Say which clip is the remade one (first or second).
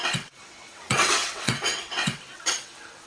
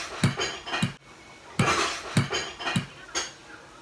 first